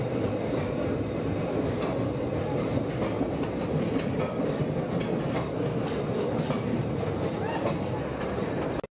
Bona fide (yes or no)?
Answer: yes